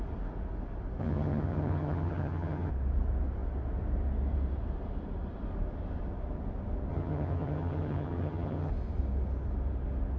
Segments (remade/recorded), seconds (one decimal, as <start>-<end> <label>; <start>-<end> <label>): 0.0-1.0 recorded; 1.0-2.7 remade; 2.7-6.9 recorded; 6.9-8.7 remade; 8.7-10.2 recorded